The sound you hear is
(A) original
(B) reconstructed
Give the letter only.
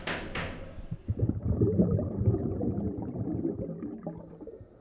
A